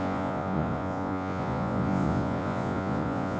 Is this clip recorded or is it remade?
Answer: remade